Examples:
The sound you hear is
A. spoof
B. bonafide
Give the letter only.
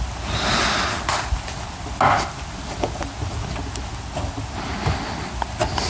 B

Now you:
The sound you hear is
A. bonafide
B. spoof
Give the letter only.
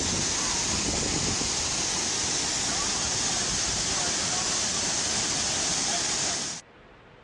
A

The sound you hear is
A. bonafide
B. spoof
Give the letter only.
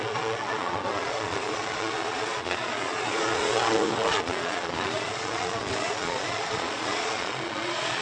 B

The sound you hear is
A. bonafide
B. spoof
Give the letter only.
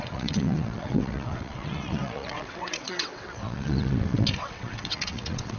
B